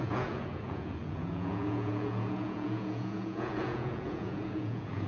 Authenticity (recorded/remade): remade